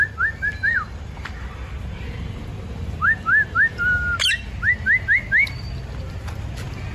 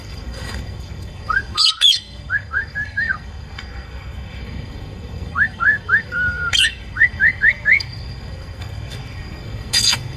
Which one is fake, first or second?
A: second